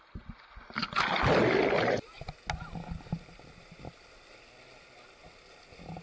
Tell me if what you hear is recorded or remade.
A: recorded